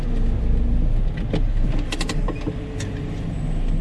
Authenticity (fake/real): real